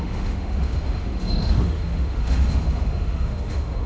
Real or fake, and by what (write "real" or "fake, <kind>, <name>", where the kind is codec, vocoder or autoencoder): fake, autoencoder, DAC-VAE